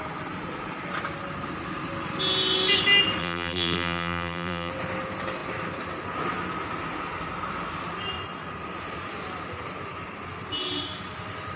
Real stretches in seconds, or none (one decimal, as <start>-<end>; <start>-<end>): 0.0-3.2; 4.7-11.6

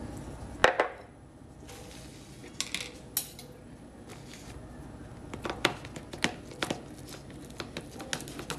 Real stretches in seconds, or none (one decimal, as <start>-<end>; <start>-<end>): 0.0-8.6